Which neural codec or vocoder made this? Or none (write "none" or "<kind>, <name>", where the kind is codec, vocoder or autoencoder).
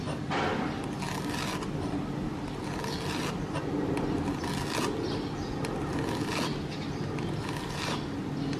none